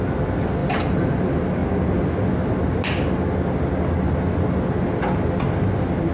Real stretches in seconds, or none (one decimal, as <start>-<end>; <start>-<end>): 0.0-0.6; 1.2-6.1

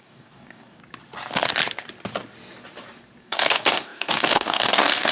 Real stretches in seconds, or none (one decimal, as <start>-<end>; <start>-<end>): 0.8-3.2

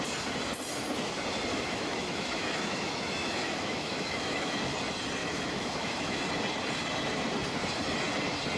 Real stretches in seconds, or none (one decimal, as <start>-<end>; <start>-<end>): 0.0-1.5; 4.6-5.2; 6.2-8.6

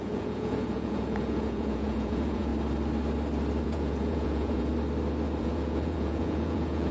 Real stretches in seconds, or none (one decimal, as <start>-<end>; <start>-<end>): 2.5-3.6; 4.7-5.4

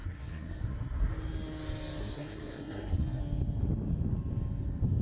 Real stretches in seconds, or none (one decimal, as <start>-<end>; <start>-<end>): 1.1-2.0; 3.2-5.0